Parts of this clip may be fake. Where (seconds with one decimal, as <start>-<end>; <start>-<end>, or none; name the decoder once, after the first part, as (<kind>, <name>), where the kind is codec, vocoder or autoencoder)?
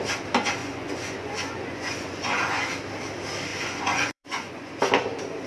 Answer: 0.6-2.6 (vocoder, Vocos); 3.5-4.7